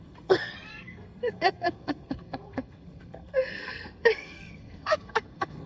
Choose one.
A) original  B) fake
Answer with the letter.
B